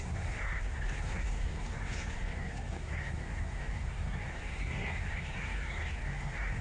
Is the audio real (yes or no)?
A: no